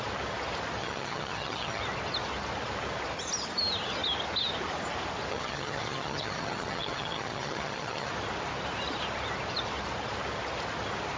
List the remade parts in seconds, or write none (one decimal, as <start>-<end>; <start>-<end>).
0.8-1.8; 5.3-8.1